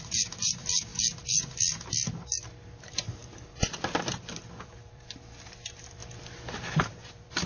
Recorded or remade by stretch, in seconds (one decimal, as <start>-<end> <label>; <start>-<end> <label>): 0.0-0.9 remade; 0.9-2.8 recorded; 2.8-3.2 remade; 3.2-4.1 recorded; 4.1-6.0 remade; 6.0-6.8 recorded; 6.8-7.5 remade